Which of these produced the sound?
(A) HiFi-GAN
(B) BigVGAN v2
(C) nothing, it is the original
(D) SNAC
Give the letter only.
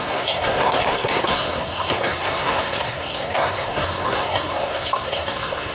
D